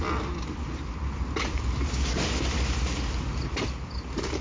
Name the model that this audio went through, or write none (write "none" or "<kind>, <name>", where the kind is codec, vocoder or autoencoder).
none